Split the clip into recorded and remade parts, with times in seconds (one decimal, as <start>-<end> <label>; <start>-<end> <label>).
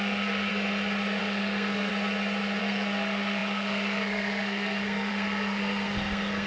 0.0-0.5 remade; 0.5-1.2 recorded; 1.2-1.9 remade; 1.9-2.6 recorded; 2.6-6.5 remade